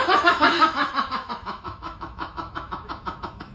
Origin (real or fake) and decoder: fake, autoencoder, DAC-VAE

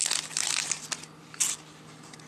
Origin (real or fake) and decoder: real